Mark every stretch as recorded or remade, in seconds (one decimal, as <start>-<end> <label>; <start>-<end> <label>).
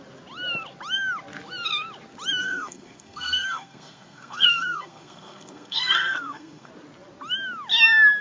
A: 0.0-2.4 recorded; 2.4-6.7 remade; 6.7-8.2 recorded